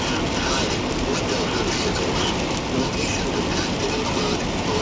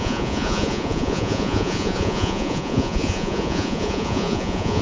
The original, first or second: first